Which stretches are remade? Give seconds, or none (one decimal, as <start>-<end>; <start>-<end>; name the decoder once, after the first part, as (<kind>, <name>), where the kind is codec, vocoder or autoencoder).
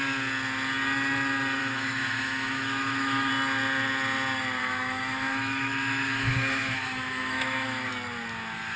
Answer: 1.6-3.3 (autoencoder, DAC-VAE); 4.6-7.9